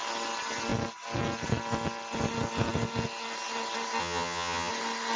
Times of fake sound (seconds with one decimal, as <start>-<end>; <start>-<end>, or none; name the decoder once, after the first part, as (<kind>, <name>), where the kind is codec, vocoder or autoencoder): 4.0-4.7 (vocoder, HiFi-GAN)